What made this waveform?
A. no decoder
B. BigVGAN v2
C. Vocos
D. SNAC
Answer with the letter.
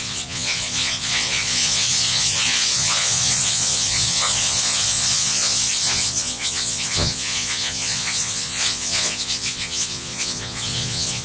C